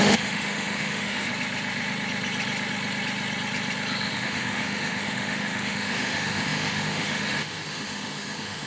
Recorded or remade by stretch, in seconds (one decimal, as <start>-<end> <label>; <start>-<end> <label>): 0.0-1.3 remade; 1.3-4.1 recorded; 4.1-8.7 remade